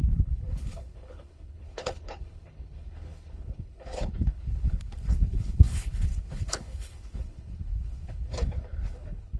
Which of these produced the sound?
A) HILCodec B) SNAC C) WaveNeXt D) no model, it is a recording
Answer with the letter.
A